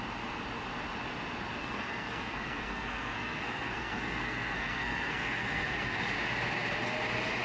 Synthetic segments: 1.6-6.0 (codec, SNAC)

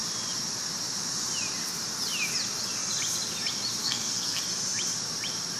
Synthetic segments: 3.8-4.4 (codec, SNAC)

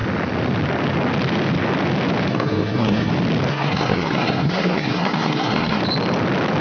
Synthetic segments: 2.3-3.1 (codec, SNAC); 3.5-5.8